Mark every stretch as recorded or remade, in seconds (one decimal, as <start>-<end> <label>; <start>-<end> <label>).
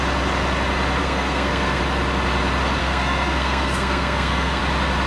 0.0-1.0 recorded; 1.0-1.8 remade; 1.8-2.8 recorded; 2.8-4.6 remade; 4.6-5.1 recorded